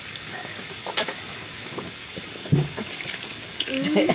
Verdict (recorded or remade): remade